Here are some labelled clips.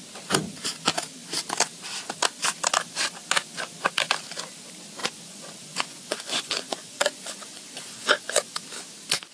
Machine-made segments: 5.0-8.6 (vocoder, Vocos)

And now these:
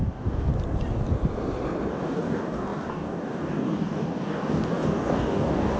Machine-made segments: 0.0-0.5 (codec, DAC); 1.9-5.8

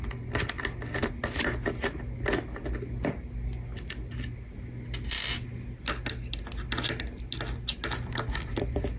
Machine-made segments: none

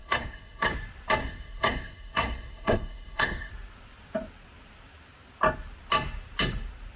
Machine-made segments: 0.0-0.7 (codec, SNAC); 1.2-3.5

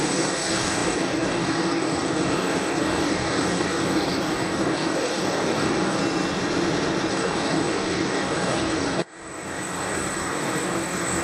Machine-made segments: 0.0-6.0 (codec, DAC); 7.1-11.2

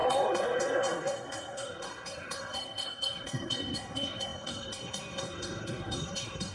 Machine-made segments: 0.0-6.5 (codec, SNAC)

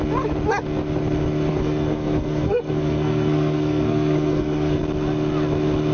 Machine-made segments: 1.5-4.8 (codec, SNAC)

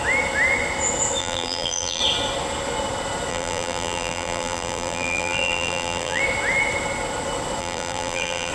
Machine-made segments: 1.2-2.0 (vocoder, BigVGAN v2); 3.3-6.2; 7.6-8.5